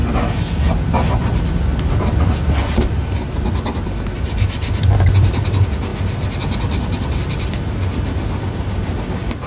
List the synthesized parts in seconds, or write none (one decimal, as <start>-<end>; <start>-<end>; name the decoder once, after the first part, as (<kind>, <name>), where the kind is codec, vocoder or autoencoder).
none

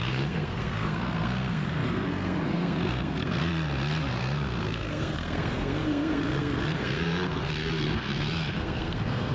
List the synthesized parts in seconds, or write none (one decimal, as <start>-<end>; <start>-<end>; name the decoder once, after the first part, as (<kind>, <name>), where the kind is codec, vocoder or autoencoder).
0.0-3.5 (codec, SNAC); 4.1-9.3

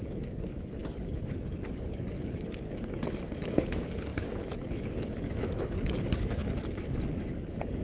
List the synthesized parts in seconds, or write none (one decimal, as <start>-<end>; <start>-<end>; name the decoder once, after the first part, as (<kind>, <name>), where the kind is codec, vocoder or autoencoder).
0.0-0.8 (codec, DAC); 1.3-7.8

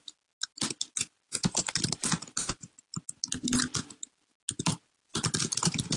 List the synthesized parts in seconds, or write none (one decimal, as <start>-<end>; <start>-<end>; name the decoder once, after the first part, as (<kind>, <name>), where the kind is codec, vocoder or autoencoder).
none

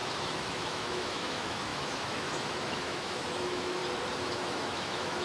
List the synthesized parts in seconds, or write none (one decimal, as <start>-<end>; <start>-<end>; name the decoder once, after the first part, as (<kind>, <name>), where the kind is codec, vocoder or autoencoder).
0.0-3.8 (autoencoder, DAC-VAE); 4.3-5.2

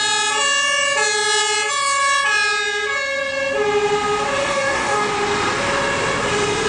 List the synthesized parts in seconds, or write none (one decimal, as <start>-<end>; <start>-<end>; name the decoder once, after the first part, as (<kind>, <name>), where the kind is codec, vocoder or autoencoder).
4.4-5.1 (codec, DAC)

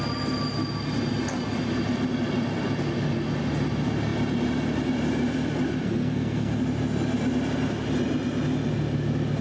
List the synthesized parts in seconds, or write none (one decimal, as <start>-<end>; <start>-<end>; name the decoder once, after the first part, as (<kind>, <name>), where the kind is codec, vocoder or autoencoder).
5.8-6.6 (codec, SNAC)

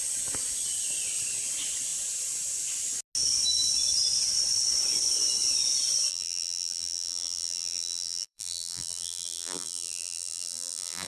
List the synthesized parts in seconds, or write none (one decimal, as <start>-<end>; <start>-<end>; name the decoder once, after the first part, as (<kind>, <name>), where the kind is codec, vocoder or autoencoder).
6.1-11.1 (vocoder, BigVGAN v2)